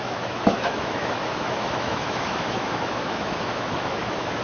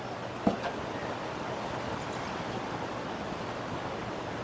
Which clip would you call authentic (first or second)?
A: second